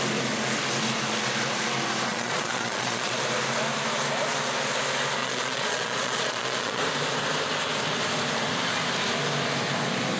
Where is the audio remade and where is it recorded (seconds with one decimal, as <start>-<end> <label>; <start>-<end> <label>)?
0.0-2.1 recorded; 2.1-3.2 remade; 3.2-5.2 recorded; 5.2-6.8 remade; 6.8-10.2 recorded